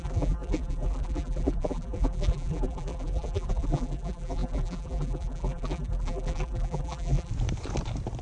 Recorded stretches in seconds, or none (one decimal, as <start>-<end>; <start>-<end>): 7.3-8.2